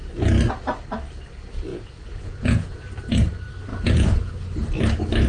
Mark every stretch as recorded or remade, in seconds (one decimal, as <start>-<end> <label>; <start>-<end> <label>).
0.0-1.7 recorded; 1.7-2.7 remade; 2.7-3.7 recorded; 3.7-4.3 remade; 4.3-5.3 recorded